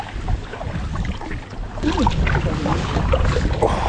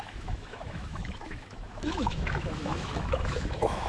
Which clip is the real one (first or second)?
first